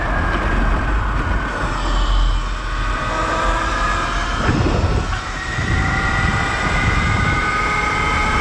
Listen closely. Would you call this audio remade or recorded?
recorded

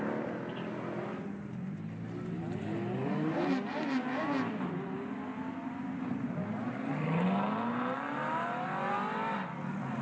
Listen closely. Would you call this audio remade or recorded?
recorded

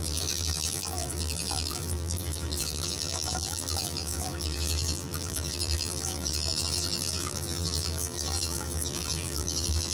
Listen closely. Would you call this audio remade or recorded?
remade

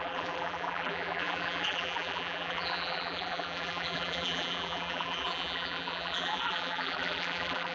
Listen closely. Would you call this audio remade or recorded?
remade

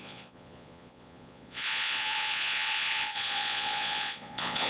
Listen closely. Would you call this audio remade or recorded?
remade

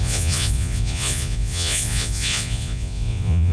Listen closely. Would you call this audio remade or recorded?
remade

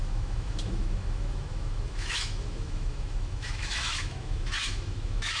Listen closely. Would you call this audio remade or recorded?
remade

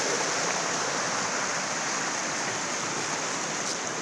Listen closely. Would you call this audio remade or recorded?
recorded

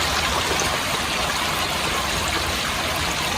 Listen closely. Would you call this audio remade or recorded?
recorded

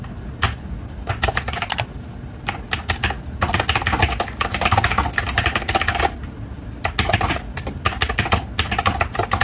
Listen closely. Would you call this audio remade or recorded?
recorded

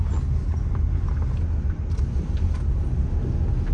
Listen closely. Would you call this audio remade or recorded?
recorded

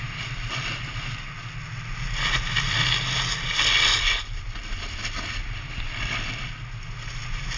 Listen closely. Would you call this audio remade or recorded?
recorded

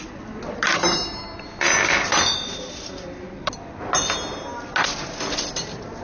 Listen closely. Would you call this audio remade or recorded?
recorded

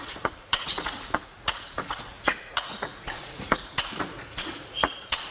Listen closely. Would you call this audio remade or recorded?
remade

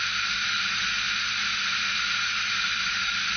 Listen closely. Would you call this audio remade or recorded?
recorded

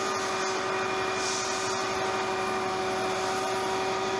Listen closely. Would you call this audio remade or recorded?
recorded